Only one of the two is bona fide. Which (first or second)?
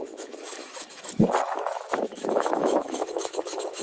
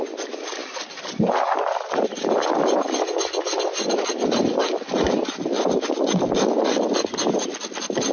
second